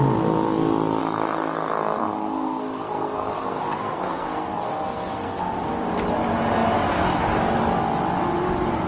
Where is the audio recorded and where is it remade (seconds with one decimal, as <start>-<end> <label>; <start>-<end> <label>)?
0.0-1.0 recorded; 1.0-5.7 remade; 5.7-8.9 recorded